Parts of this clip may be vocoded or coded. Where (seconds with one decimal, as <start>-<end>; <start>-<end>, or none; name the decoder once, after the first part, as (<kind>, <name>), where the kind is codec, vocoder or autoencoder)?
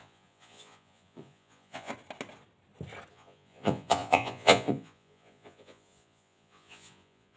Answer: 0.0-1.9 (vocoder, Vocos); 3.1-7.4